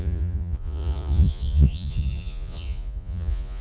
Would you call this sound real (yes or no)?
no